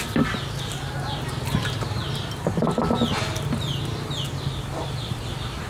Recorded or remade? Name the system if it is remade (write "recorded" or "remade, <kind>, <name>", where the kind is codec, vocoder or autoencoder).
recorded